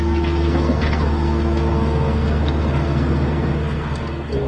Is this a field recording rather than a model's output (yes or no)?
no